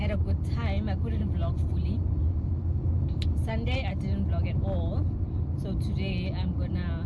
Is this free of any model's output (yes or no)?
yes